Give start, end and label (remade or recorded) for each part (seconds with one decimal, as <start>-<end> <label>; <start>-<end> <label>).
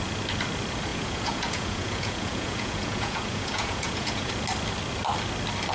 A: 0.0-0.9 recorded; 0.9-4.3 remade; 4.3-5.7 recorded